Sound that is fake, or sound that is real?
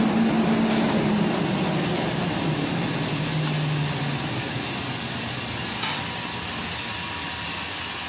real